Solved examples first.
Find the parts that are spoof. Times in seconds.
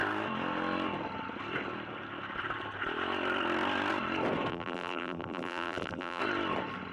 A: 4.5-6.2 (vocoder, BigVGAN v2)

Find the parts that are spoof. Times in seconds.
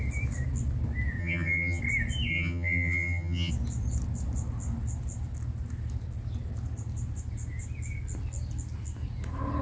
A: 1.2-1.8 (vocoder, HiFi-GAN); 2.3-3.5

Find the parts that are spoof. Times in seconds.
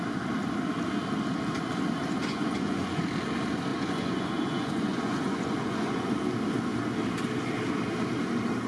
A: 2.3-3.0 (vocoder, Vocos); 3.7-6.1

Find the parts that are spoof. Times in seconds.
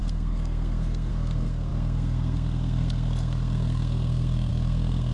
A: 0.0-5.1 (codec, SNAC)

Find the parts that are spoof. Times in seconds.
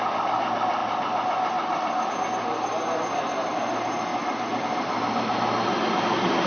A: 0.8-2.1 (vocoder, BigVGAN v2); 4.1-4.6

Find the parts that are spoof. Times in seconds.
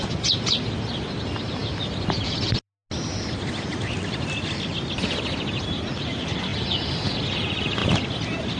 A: none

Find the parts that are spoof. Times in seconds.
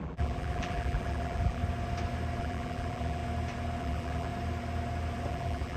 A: 0.0-1.6 (vocoder, BigVGAN v2); 2.4-3.2; 3.8-4.3; 5.3-5.8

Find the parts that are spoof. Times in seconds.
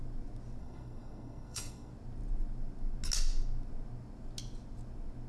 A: 0.6-1.9 (codec, SNAC)